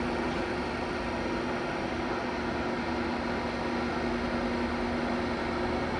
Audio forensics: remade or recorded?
recorded